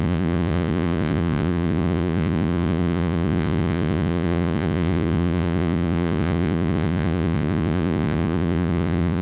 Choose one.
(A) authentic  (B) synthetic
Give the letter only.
B